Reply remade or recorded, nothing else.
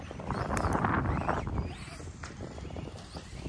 recorded